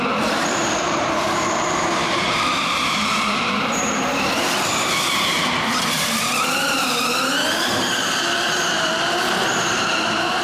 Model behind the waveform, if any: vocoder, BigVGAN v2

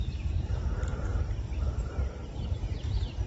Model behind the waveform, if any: none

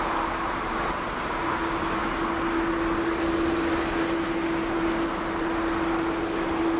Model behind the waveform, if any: none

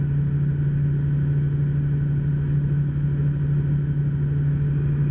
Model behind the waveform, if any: none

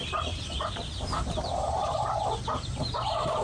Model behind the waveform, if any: vocoder, BigVGAN v2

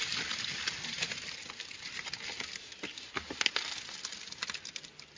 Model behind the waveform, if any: none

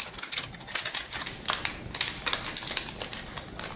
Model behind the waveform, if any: none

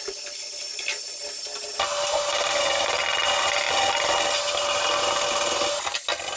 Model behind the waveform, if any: none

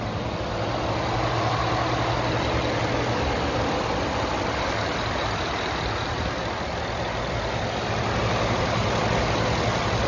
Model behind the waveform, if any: none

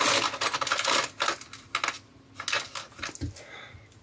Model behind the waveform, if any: none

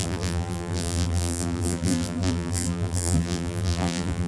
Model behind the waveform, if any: vocoder, BigVGAN v2